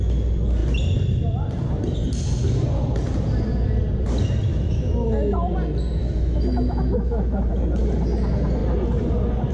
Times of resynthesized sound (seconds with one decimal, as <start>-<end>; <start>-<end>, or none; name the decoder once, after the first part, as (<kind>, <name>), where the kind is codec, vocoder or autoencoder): 4.5-5.3 (autoencoder, DAC-VAE); 6.0-7.5